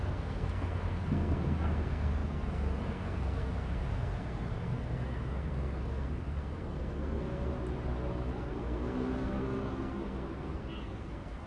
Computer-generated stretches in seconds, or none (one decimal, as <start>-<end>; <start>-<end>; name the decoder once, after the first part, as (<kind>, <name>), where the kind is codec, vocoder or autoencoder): 0.0-7.5 (codec, SNAC); 8.1-11.5